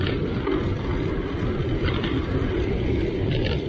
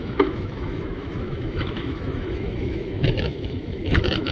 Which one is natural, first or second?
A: first